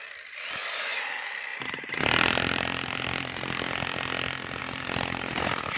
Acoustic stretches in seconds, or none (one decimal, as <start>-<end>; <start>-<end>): none